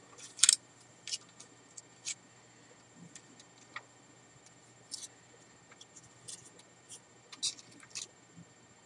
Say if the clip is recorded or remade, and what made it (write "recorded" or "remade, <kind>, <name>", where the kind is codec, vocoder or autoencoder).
recorded